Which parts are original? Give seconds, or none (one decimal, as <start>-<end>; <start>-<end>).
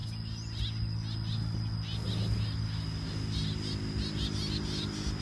0.0-5.2